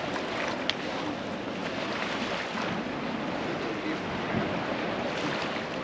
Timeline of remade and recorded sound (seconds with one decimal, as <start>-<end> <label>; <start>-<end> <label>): 0.0-5.8 recorded